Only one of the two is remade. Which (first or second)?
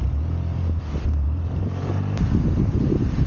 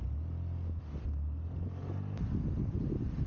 first